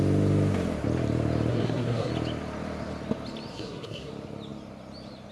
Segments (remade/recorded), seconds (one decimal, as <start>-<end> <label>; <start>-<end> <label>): 0.0-1.5 recorded; 1.5-2.1 remade; 2.1-3.5 recorded; 3.5-4.1 remade; 4.1-5.3 recorded